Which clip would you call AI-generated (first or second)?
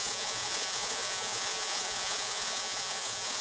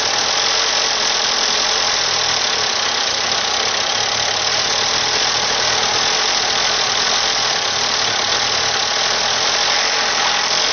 first